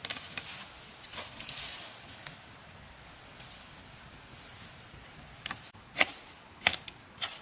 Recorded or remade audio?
recorded